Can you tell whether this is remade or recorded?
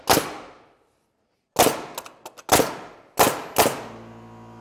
recorded